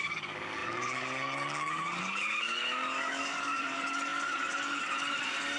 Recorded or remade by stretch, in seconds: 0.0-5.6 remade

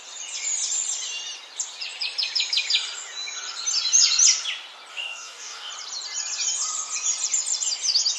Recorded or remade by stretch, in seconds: 0.0-4.9 recorded; 4.9-5.7 remade; 5.7-8.2 recorded